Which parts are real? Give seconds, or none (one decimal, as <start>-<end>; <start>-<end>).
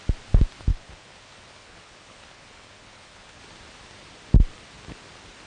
0.0-0.7; 3.4-5.5